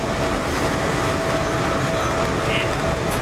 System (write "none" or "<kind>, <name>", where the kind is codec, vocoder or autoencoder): none